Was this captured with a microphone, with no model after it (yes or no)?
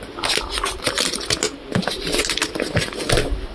yes